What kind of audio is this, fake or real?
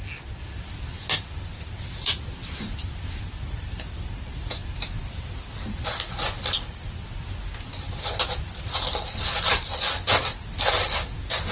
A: real